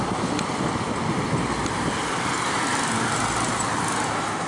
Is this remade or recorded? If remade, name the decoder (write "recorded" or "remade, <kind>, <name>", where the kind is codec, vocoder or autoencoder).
recorded